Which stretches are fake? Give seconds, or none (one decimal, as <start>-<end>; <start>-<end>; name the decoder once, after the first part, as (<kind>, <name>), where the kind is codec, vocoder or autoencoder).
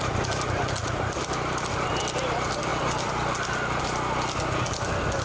0.8-1.7 (vocoder, BigVGAN v2)